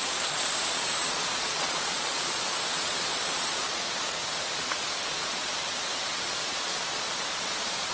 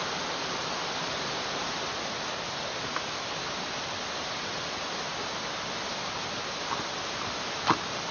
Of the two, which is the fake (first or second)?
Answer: first